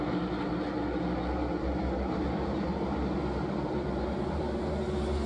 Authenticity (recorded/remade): recorded